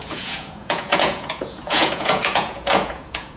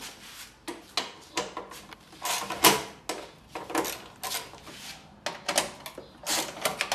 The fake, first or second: first